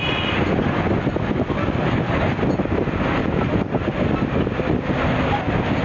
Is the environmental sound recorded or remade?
recorded